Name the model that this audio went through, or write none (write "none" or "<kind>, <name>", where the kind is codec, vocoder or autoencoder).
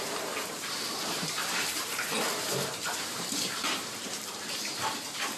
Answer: vocoder, BigVGAN v2